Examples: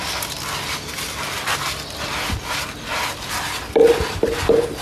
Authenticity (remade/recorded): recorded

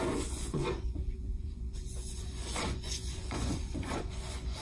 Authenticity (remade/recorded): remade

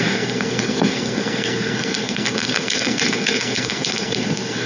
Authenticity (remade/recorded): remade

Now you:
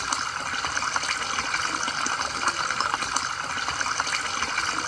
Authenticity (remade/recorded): recorded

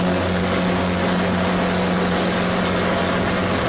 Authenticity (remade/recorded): recorded